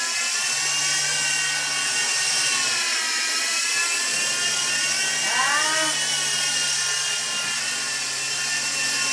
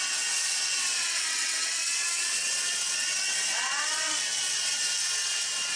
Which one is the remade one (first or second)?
second